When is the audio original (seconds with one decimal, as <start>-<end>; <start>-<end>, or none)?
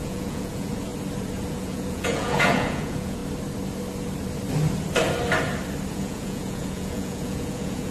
0.9-1.5; 3.2-5.9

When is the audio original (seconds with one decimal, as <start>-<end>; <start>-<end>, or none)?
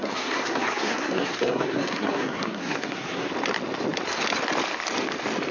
3.3-5.5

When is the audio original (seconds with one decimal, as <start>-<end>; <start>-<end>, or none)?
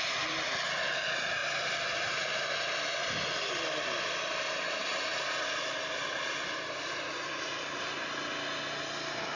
0.0-9.4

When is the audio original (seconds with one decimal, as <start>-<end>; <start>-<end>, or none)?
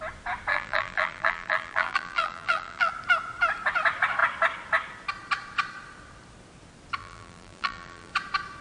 0.0-0.5; 2.9-7.0; 8.1-8.6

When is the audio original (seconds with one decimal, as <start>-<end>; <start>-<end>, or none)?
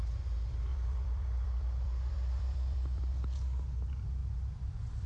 0.0-0.7; 3.1-4.2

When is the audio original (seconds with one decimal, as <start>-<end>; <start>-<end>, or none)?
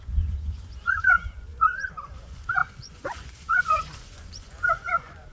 none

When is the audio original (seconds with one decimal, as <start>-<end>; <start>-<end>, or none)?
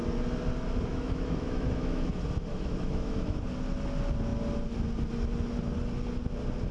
0.0-0.9; 2.1-2.5; 3.4-6.7